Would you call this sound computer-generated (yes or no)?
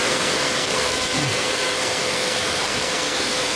yes